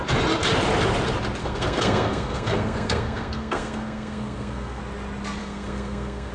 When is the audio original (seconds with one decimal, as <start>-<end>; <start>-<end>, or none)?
0.0-1.4; 4.8-5.4